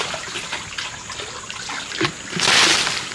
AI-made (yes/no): no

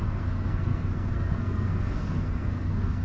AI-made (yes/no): yes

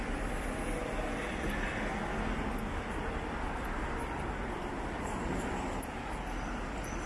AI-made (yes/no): no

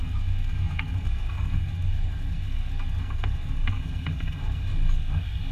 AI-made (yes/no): yes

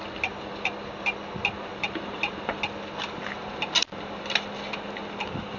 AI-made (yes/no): no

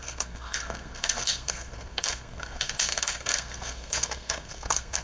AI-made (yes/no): yes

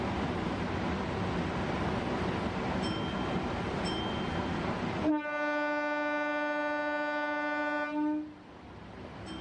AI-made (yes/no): no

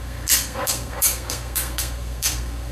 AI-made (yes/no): yes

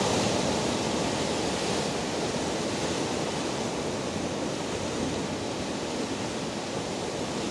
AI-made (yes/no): no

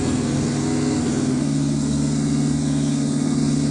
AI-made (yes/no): yes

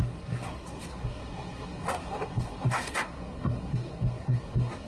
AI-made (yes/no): yes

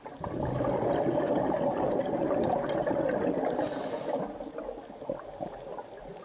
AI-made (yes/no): no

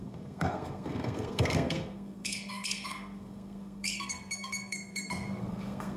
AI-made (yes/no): yes